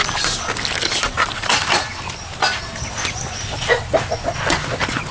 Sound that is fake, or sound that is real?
real